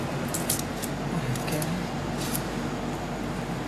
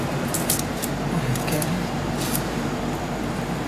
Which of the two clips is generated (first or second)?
second